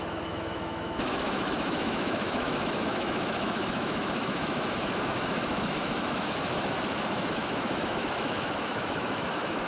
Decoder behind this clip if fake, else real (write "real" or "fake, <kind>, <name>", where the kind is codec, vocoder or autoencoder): fake, autoencoder, DAC-VAE